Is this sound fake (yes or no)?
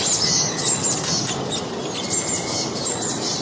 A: no